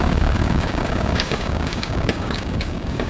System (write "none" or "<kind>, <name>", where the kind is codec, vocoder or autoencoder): codec, DAC